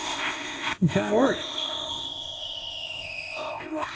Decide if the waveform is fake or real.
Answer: fake